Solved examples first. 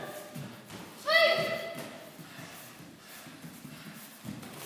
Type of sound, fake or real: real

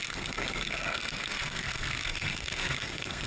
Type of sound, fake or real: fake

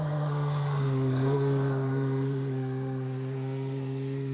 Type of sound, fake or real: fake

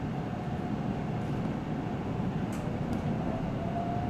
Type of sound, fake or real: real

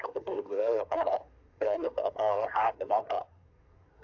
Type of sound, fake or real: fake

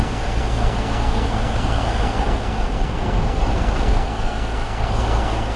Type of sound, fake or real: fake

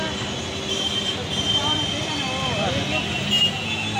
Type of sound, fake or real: real